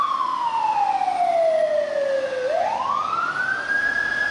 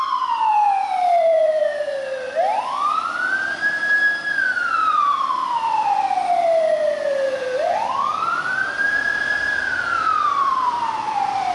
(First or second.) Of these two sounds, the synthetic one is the second